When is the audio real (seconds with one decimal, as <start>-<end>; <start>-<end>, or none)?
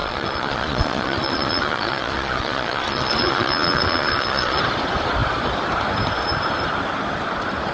4.6-7.7